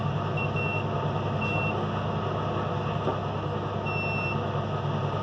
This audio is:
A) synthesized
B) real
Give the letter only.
B